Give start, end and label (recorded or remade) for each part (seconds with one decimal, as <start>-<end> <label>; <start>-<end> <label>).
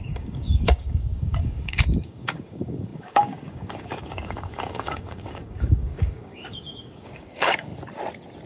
0.0-7.7 remade; 7.7-8.5 recorded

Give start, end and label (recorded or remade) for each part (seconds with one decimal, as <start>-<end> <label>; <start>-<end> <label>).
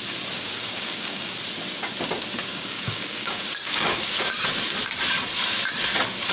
0.0-0.4 recorded; 0.4-1.4 remade; 1.4-2.5 recorded; 2.5-4.3 remade; 4.3-6.3 recorded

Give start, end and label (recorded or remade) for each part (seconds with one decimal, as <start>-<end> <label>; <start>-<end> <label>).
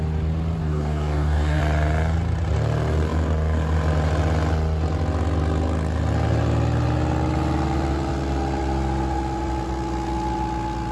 0.0-0.6 recorded; 0.6-1.6 remade; 1.6-10.9 recorded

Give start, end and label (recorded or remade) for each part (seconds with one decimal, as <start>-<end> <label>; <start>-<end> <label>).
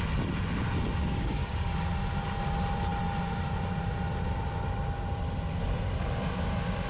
0.0-1.0 recorded; 1.0-1.7 remade; 1.7-6.9 recorded